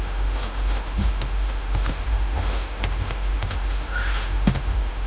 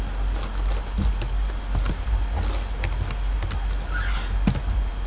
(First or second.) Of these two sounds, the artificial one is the first